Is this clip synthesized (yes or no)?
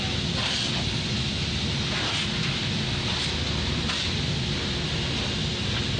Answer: no